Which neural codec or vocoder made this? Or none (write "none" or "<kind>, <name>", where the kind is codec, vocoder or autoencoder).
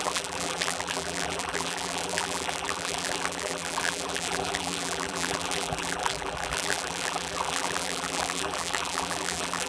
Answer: vocoder, BigVGAN v2